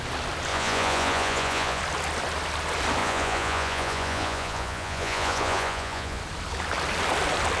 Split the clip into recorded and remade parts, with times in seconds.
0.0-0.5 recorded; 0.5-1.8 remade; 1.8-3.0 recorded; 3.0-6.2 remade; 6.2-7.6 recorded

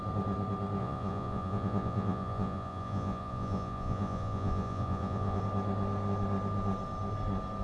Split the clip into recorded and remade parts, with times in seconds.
0.0-0.8 recorded; 0.8-5.4 remade; 5.4-7.6 recorded

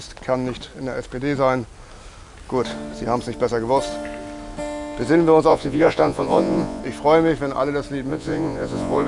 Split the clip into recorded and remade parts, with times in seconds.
0.0-5.5 recorded; 5.5-6.8 remade; 6.8-8.1 recorded; 8.1-9.1 remade

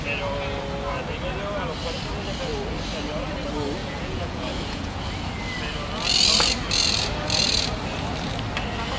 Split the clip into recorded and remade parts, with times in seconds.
0.0-3.8 recorded; 3.8-5.0 remade; 5.0-9.0 recorded

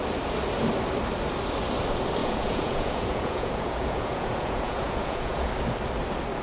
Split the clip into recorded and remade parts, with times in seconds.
0.0-2.2 recorded; 2.2-5.5 remade; 5.5-6.4 recorded

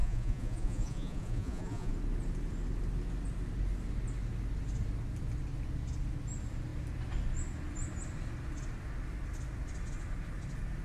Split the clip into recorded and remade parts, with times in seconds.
0.0-1.9 remade; 1.9-10.8 recorded

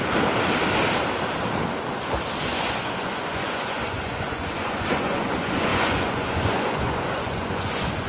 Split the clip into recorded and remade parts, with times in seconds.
0.0-2.4 recorded; 2.4-8.1 remade

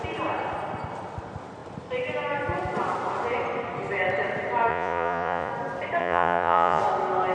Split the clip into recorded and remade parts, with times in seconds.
0.0-4.7 recorded; 4.7-5.5 remade; 5.5-6.0 recorded; 6.0-6.8 remade; 6.8-7.3 recorded